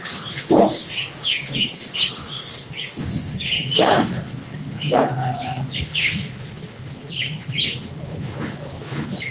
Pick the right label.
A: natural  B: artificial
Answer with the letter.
B